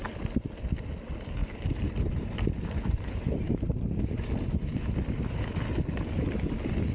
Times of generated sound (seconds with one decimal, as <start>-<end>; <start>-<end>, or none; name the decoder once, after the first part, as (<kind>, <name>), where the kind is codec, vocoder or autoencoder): 1.4-5.3 (vocoder, BigVGAN v2)